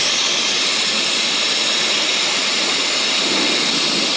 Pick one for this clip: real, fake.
real